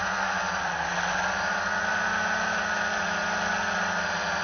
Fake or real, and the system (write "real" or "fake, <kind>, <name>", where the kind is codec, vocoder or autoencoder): real